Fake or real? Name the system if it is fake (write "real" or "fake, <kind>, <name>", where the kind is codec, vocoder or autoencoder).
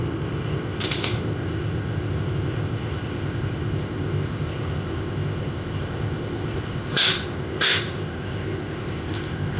fake, codec, ZipCodec